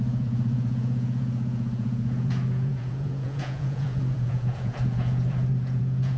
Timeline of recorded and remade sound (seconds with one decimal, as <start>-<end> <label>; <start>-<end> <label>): 0.0-6.2 remade